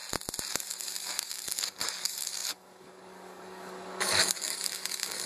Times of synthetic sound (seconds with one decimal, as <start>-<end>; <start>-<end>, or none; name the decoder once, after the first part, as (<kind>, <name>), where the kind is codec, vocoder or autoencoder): 0.5-5.3 (codec, DAC)